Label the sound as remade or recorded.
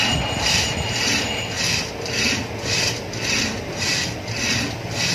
recorded